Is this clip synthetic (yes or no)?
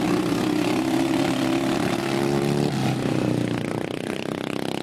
no